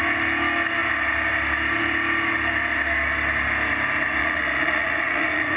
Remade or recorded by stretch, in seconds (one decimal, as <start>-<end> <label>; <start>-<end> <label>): 0.0-4.2 recorded; 4.2-5.6 remade